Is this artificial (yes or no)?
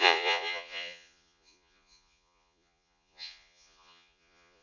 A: yes